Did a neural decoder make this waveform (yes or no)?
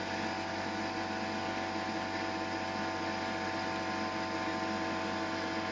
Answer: no